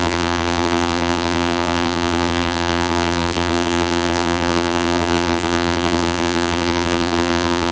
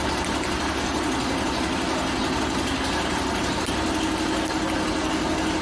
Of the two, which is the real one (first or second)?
second